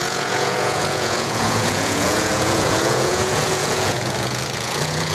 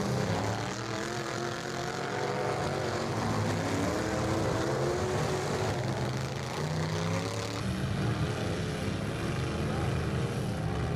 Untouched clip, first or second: second